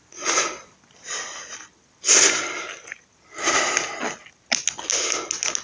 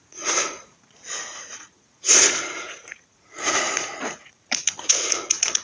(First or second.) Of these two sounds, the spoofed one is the second